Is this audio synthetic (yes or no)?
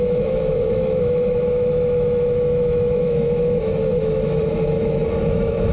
yes